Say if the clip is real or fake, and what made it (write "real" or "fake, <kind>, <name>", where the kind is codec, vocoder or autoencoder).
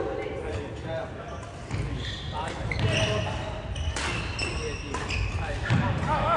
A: real